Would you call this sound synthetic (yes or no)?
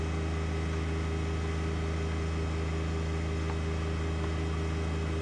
no